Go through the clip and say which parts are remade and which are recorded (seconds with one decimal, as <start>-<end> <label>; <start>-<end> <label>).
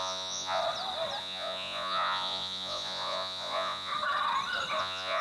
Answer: 0.0-0.6 remade; 0.6-1.2 recorded; 1.2-3.9 remade; 3.9-4.8 recorded; 4.8-5.2 remade